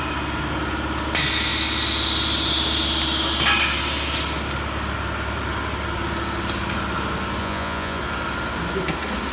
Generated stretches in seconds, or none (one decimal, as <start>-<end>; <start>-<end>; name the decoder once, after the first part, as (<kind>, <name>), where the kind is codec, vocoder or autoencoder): 7.4-8.0 (vocoder, Vocos)